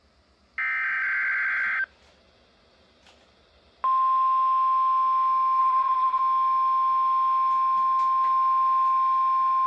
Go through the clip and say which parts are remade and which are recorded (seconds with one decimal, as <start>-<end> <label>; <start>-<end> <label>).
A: 0.0-5.6 recorded; 5.6-6.2 remade; 6.2-9.7 recorded